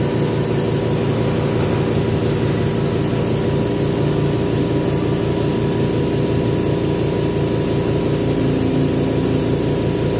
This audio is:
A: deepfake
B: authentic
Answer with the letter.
B